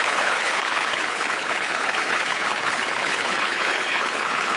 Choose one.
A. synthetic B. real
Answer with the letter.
A